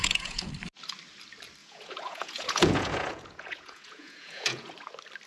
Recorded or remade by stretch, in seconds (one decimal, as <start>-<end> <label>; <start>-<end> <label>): 0.0-0.5 remade; 0.5-1.6 recorded; 1.6-4.7 remade; 4.7-5.3 recorded